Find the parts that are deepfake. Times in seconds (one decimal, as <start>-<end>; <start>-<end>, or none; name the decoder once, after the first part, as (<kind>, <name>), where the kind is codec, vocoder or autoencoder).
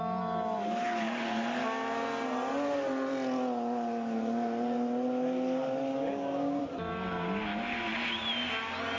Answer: 5.9-6.6 (codec, DAC)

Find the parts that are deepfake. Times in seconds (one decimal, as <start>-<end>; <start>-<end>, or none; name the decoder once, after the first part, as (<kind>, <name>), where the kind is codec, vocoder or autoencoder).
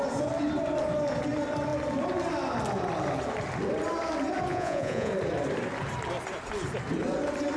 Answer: 4.5-5.1 (vocoder, Vocos)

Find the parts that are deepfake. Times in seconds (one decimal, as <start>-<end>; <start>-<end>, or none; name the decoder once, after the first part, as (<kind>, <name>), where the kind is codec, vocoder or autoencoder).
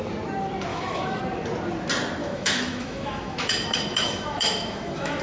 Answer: 0.7-1.2 (autoencoder, DAC-VAE); 2.2-5.2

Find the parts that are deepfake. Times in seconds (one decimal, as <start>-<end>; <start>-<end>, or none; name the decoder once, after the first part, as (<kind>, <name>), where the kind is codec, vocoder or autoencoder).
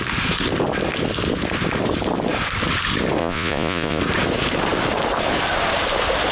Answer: 3.2-4.0 (vocoder, Vocos)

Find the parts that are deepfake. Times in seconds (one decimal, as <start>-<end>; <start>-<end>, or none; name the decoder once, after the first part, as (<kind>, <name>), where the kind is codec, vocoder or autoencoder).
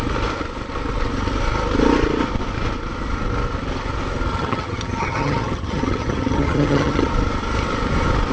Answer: 4.3-7.1 (vocoder, HiFi-GAN)